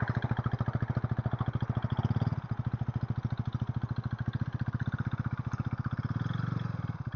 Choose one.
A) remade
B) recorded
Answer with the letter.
B